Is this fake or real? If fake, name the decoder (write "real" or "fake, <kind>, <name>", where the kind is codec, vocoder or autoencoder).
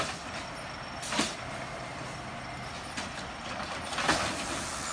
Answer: real